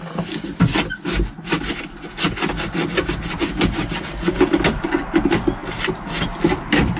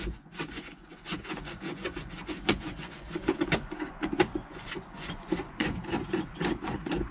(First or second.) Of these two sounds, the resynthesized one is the second